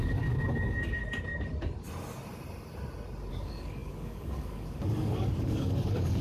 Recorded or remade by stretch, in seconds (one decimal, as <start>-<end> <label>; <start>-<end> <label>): 0.0-1.0 remade; 1.0-3.3 recorded; 3.3-6.2 remade